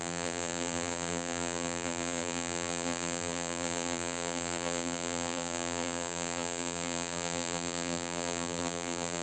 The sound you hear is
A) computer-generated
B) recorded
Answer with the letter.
A